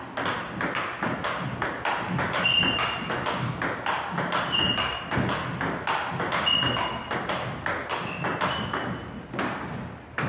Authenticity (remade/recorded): recorded